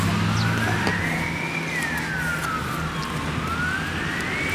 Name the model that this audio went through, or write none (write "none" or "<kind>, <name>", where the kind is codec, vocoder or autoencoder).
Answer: none